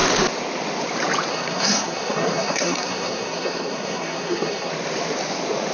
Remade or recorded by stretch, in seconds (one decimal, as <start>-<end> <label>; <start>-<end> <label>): 0.0-1.3 recorded; 1.3-4.7 remade; 4.7-5.7 recorded